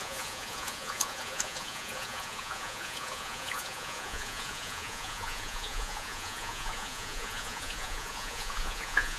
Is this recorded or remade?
remade